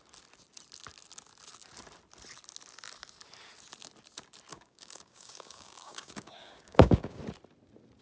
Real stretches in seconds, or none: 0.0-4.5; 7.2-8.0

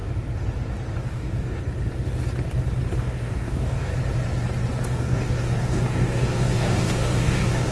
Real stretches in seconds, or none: 0.0-1.0; 1.6-3.0; 3.9-4.8

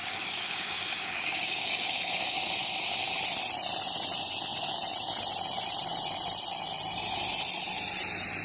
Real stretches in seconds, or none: 2.4-8.4

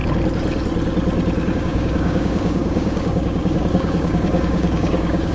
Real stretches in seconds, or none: 0.0-1.5

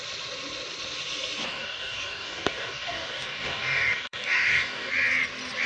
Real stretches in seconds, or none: 0.0-1.5; 4.9-5.7